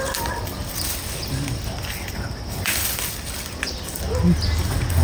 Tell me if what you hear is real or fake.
real